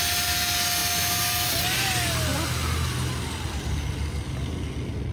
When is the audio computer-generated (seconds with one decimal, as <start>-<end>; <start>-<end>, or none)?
none